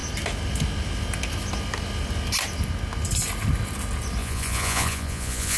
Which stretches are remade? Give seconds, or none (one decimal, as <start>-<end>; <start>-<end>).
4.2-5.6